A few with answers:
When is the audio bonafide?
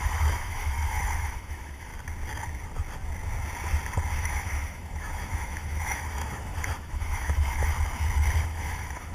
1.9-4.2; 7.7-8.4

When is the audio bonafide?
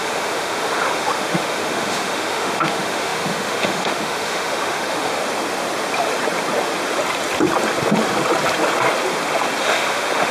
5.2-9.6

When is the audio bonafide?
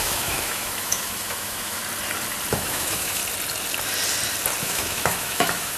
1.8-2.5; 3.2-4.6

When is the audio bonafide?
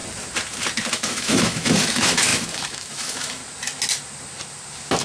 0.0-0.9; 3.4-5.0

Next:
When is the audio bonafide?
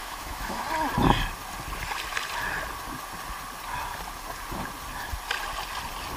0.6-6.2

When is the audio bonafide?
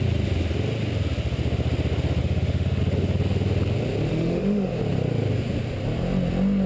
0.0-2.2; 2.8-4.1; 4.8-6.7